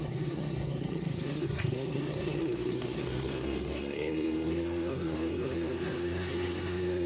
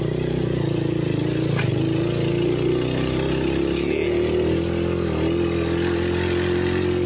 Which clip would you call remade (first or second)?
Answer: first